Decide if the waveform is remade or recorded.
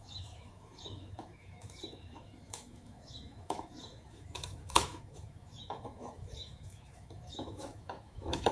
remade